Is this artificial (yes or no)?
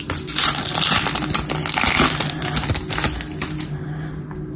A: no